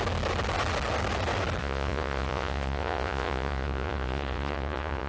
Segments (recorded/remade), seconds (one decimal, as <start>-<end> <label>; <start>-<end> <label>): 0.0-1.6 recorded; 1.6-5.1 remade